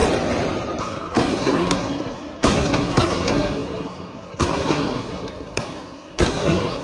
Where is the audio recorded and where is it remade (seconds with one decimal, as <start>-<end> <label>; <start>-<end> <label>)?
0.0-0.8 recorded; 0.8-6.8 remade